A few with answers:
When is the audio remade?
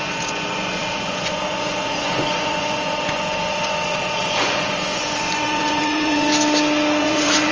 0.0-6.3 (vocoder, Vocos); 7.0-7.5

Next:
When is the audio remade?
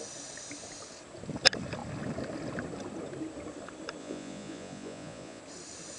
4.0-5.4 (vocoder, Vocos)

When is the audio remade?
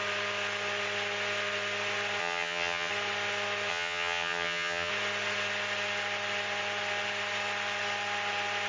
2.2-2.9 (vocoder, HiFi-GAN); 3.7-4.9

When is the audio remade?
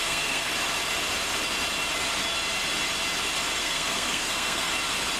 0.0-0.5 (codec, SNAC); 3.6-4.7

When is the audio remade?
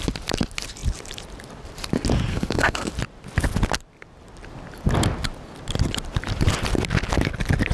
2.3-2.9 (codec, SNAC)